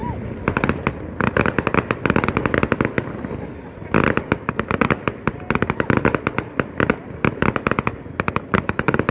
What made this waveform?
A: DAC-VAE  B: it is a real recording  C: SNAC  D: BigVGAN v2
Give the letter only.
B